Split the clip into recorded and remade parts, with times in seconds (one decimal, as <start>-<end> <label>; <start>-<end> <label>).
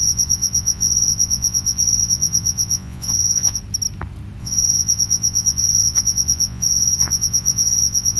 0.0-3.6 remade; 3.6-4.4 recorded; 4.4-8.2 remade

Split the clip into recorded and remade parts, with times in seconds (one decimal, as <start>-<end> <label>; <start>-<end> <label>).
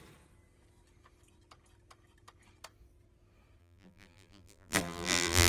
0.0-3.6 recorded; 3.6-5.5 remade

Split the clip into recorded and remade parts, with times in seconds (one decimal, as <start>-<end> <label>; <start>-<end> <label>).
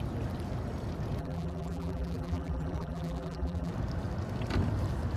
0.0-1.2 recorded; 1.2-3.7 remade; 3.7-5.2 recorded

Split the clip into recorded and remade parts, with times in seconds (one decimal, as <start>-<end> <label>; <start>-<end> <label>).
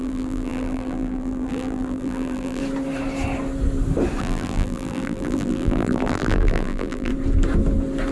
0.0-2.6 remade; 2.6-4.2 recorded; 4.2-7.1 remade; 7.1-8.1 recorded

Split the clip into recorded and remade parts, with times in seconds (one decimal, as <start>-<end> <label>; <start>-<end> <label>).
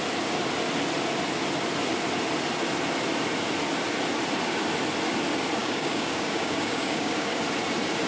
0.0-5.6 recorded; 5.6-7.4 remade; 7.4-8.1 recorded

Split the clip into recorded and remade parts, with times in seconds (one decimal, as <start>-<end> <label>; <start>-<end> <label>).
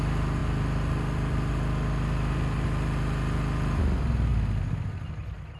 0.0-5.6 recorded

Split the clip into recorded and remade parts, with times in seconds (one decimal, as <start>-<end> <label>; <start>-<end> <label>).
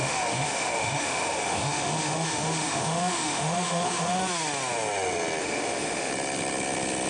0.0-4.2 remade; 4.2-5.4 recorded; 5.4-6.1 remade; 6.1-7.1 recorded